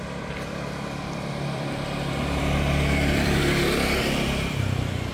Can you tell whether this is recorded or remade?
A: remade